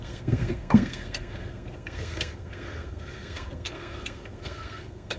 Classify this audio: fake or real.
fake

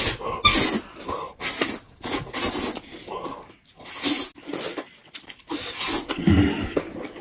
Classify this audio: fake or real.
real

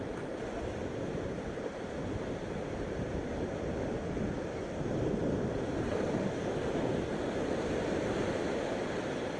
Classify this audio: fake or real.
real